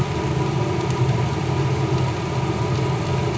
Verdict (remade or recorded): recorded